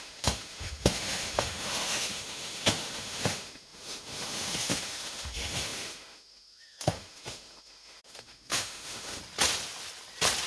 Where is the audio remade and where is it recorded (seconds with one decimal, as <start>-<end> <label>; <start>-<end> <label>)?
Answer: 0.0-9.2 remade; 9.2-10.5 recorded

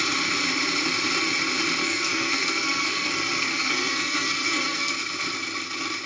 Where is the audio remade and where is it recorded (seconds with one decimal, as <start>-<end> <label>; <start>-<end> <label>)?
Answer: 0.0-1.8 recorded; 1.8-4.9 remade; 4.9-6.1 recorded

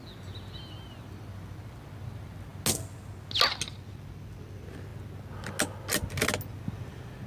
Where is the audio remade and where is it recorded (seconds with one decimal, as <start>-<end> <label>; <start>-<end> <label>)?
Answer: 0.0-7.3 recorded

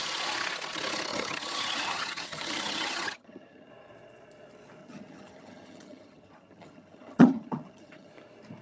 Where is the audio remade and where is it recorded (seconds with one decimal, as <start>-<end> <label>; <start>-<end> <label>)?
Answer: 0.0-1.1 recorded; 1.1-3.7 remade; 3.7-4.8 recorded; 4.8-8.1 remade; 8.1-8.6 recorded

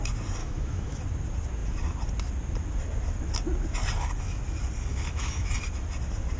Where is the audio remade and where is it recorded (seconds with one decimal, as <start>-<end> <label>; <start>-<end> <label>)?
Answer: 0.0-0.4 recorded; 0.4-1.0 remade; 1.0-4.9 recorded; 4.9-5.5 remade; 5.5-6.4 recorded

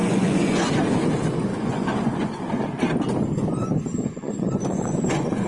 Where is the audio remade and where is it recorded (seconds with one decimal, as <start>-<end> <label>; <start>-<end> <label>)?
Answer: 0.0-0.7 remade; 0.7-1.5 recorded; 1.5-2.5 remade; 2.5-3.9 recorded; 3.9-5.5 remade

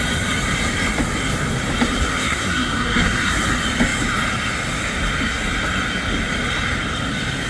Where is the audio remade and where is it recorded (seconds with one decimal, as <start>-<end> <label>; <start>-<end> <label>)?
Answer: 0.0-2.2 recorded; 2.2-3.4 remade; 3.4-7.5 recorded

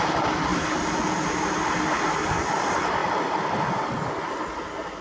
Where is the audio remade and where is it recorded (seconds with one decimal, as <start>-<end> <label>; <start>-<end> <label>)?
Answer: 0.0-5.0 recorded